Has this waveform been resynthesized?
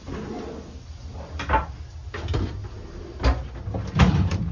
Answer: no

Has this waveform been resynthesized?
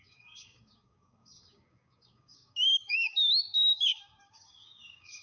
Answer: yes